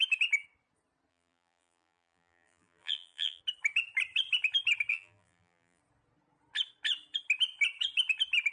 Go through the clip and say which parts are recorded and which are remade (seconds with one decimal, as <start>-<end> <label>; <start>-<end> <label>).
0.0-1.1 recorded; 1.1-3.4 remade; 3.4-4.9 recorded; 4.9-5.8 remade; 5.8-8.5 recorded